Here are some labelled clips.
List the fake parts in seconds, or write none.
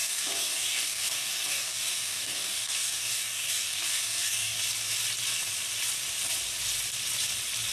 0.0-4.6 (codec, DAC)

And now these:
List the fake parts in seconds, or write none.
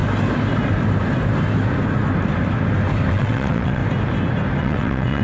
3.1-3.8 (vocoder, WaveNeXt); 4.6-5.2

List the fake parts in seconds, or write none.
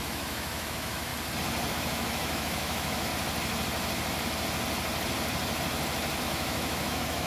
0.0-1.1 (autoencoder, DAC-VAE); 1.7-3.1; 6.2-7.3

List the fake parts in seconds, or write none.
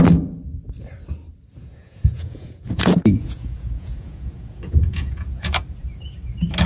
1.6-5.6 (vocoder, Vocos)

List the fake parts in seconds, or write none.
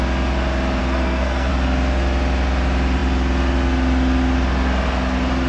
0.8-1.5 (codec, SNAC)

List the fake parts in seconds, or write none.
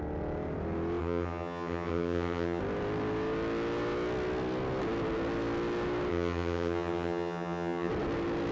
1.0-2.6 (vocoder, HiFi-GAN); 6.1-7.9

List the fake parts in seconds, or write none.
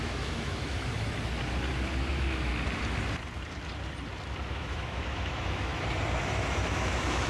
0.0-0.9 (autoencoder, DAC-VAE); 2.1-2.5; 4.5-5.7; 6.2-7.3